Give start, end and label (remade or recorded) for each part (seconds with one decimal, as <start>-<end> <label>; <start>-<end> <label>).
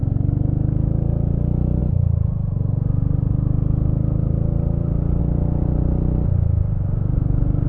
0.0-7.7 recorded